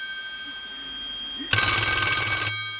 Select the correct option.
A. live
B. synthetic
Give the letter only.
A